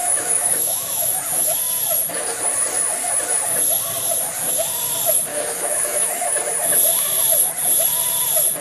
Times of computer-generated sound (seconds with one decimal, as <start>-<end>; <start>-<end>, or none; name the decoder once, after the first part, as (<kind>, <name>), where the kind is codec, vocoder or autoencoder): 0.0-1.2 (autoencoder, DAC-VAE); 5.3-6.2